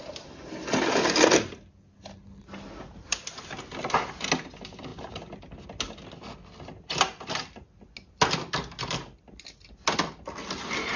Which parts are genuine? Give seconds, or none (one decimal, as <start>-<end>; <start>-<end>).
0.0-11.0